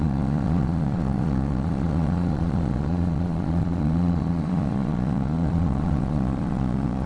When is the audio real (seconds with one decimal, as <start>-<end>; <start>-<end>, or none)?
none